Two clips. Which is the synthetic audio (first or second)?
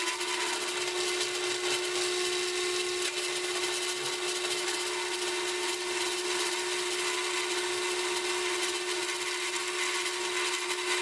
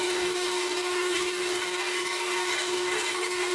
second